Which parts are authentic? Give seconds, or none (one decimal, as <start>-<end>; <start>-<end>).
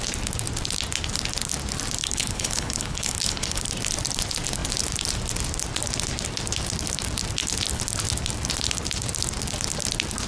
0.0-2.0; 3.6-10.3